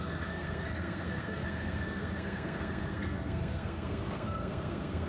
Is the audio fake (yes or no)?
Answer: yes